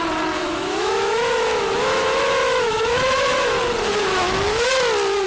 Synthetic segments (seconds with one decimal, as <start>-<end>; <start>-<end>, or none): 0.4-3.6; 4.1-4.7